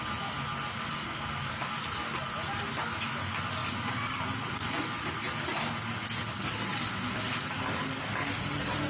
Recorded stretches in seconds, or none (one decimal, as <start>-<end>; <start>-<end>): 0.0-1.0; 1.7-8.9